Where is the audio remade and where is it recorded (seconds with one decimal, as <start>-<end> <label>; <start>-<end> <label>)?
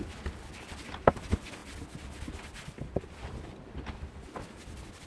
0.0-5.1 recorded